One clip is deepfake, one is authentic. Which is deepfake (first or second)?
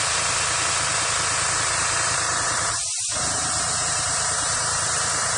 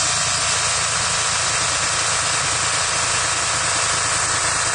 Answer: first